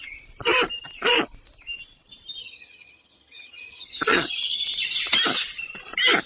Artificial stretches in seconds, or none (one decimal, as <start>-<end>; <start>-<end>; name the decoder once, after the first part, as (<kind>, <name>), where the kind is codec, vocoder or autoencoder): 2.4-4.6 (vocoder, HiFi-GAN)